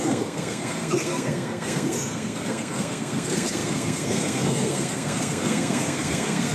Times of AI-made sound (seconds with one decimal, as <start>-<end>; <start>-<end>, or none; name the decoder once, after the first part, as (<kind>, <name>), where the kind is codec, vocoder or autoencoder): 0.0-6.5 (codec, SNAC)